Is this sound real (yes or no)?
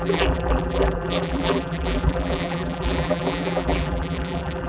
no